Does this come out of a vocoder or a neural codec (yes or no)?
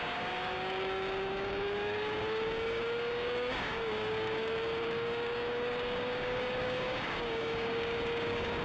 yes